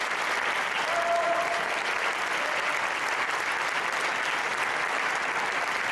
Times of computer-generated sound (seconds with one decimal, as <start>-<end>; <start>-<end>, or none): none